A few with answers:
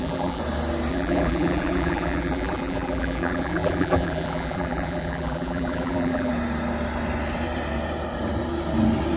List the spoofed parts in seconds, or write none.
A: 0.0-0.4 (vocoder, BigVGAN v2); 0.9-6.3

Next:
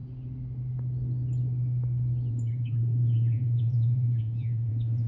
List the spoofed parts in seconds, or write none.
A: 2.3-5.1 (vocoder, Vocos)

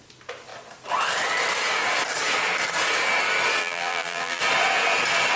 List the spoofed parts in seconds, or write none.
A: 3.6-4.4 (vocoder, BigVGAN v2)